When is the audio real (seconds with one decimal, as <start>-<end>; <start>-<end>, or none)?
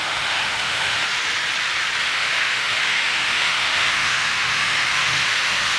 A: 1.0-2.0